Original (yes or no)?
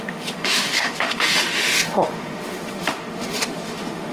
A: no